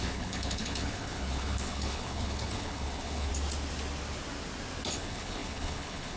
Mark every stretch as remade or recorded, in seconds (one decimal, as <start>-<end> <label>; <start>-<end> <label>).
0.0-3.3 remade; 3.3-4.9 recorded; 4.9-6.2 remade